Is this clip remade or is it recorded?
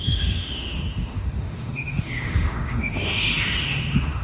remade